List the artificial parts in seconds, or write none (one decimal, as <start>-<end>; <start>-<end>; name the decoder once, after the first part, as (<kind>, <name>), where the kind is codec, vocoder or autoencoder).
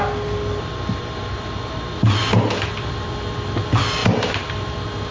none